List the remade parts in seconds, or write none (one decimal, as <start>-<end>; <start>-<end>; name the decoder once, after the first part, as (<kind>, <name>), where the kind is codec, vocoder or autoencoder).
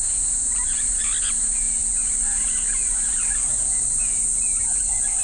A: none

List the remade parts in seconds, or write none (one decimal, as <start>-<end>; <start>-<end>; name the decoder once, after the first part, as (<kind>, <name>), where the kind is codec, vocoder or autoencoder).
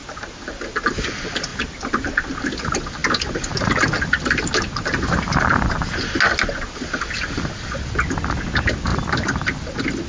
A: none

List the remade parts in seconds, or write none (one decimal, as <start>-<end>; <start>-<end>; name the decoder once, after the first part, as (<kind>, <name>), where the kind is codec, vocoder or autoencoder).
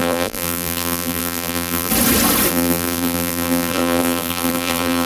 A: 0.0-1.9 (vocoder, BigVGAN v2); 2.5-5.1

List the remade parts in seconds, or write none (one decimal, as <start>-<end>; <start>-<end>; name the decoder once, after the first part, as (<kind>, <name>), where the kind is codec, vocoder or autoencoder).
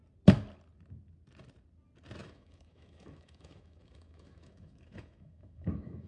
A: 2.2-6.1 (autoencoder, DAC-VAE)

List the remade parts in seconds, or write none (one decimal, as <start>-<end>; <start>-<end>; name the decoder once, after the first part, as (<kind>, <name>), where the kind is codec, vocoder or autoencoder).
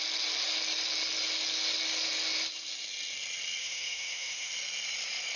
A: 3.6-4.5 (autoencoder, DAC-VAE)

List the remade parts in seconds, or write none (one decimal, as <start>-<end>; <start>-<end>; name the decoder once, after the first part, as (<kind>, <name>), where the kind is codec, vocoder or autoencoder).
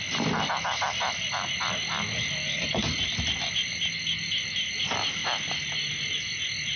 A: none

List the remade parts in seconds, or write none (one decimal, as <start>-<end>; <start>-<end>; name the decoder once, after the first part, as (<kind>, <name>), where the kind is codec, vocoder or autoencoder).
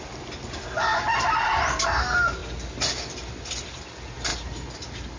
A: none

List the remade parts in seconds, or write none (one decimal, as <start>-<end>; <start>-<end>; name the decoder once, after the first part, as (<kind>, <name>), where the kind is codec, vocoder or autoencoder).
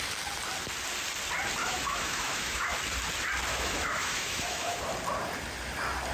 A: 1.6-2.7 (autoencoder, DAC-VAE); 3.5-4.8